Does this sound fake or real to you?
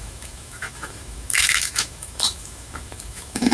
fake